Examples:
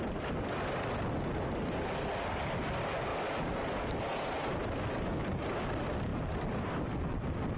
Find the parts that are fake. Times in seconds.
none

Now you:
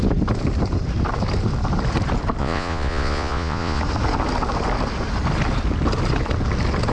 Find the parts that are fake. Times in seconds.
2.4-3.8